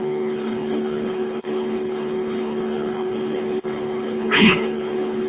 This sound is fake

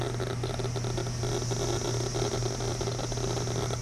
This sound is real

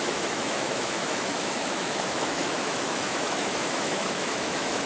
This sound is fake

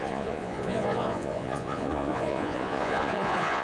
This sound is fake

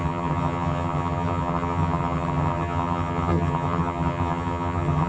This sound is fake